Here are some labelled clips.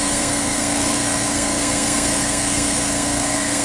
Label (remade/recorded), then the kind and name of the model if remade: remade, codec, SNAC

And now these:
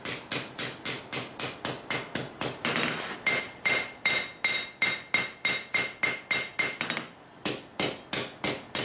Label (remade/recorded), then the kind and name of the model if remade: recorded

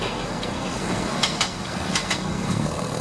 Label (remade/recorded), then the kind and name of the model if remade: remade, codec, SNAC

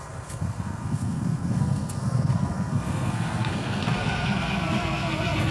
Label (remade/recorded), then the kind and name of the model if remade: remade, codec, SNAC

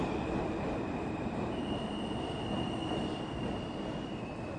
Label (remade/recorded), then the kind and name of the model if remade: recorded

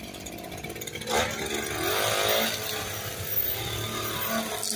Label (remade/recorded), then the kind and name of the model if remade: recorded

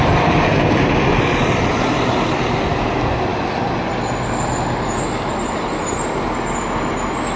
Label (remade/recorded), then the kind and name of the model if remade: recorded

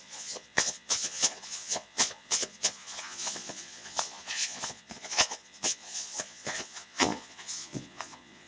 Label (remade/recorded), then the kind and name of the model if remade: remade, vocoder, Vocos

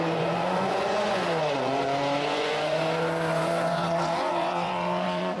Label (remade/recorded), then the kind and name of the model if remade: remade, vocoder, Vocos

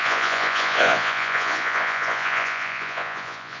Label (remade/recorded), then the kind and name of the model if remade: remade, vocoder, Vocos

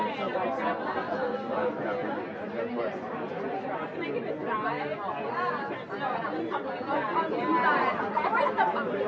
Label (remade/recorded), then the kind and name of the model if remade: recorded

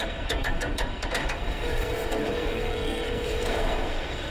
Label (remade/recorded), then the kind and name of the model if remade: remade, codec, SNAC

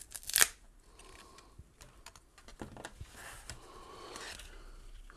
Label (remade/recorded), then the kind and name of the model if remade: recorded